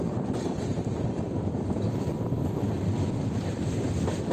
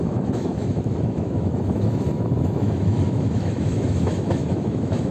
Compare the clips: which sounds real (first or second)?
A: first